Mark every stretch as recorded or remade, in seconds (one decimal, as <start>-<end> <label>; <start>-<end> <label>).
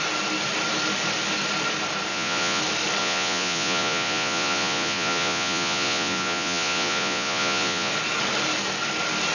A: 0.0-2.1 recorded; 2.1-2.6 remade; 2.6-3.0 recorded; 3.0-7.9 remade; 7.9-9.3 recorded